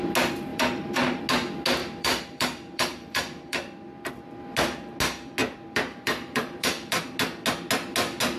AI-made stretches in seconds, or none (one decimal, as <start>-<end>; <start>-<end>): 0.5-1.2; 1.8-4.1; 5.4-7.0